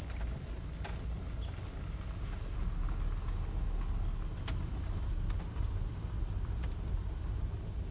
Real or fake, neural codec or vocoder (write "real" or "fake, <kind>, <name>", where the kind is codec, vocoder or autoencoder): real